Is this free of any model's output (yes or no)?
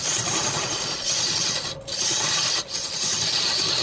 yes